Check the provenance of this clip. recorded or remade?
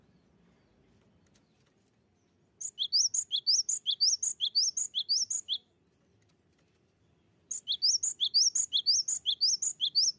recorded